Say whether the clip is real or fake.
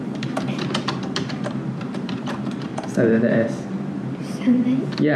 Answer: fake